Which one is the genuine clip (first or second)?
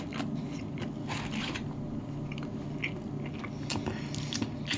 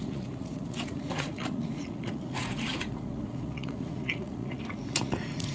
first